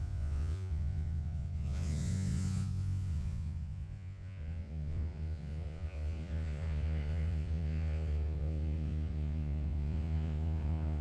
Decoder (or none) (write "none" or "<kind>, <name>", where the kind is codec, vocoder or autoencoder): vocoder, Vocos